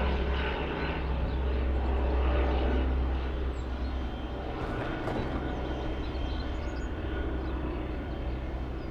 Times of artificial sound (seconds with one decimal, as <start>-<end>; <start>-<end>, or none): 6.2-8.1